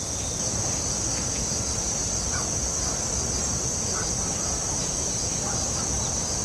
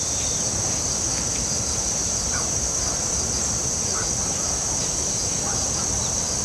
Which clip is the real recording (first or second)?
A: first